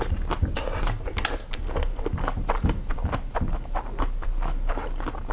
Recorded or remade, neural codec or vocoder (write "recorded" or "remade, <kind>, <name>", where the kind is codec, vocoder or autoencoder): recorded